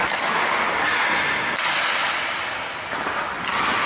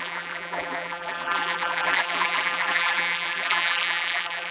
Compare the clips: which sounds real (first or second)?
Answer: first